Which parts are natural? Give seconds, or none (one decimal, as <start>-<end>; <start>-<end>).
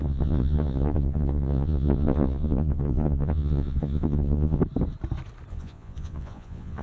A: 4.6-5.5